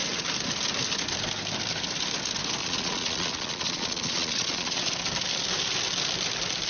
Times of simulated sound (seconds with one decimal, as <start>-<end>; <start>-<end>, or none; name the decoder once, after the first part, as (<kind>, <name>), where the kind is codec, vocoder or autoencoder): 2.6-4.9 (vocoder, Vocos)

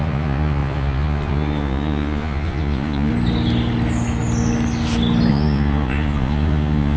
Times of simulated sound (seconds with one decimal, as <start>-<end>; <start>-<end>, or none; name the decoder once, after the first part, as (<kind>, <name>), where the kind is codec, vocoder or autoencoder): 0.0-3.1 (vocoder, Vocos); 5.3-7.0

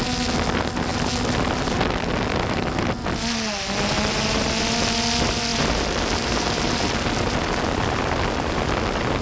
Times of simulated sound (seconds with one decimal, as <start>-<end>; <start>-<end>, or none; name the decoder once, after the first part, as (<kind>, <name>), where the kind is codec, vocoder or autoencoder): none

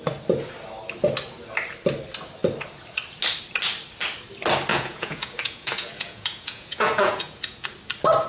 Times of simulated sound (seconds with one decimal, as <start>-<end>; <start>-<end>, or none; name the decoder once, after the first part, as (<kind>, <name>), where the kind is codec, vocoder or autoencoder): 4.7-7.6 (vocoder, Vocos)